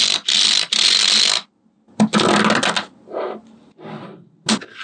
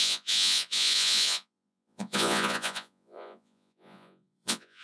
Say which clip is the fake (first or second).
second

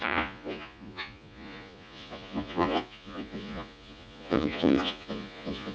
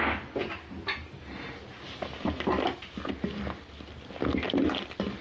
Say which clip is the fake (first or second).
first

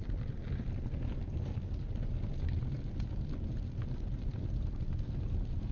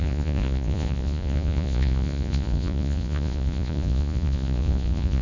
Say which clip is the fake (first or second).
second